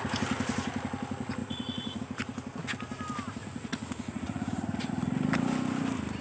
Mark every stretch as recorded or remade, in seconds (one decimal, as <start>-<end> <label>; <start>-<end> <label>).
0.0-1.4 recorded; 1.4-2.0 remade; 2.0-3.4 recorded; 3.4-4.9 remade; 4.9-6.2 recorded